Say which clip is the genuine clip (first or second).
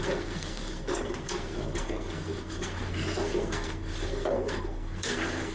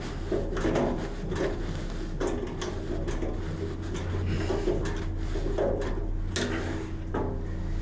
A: second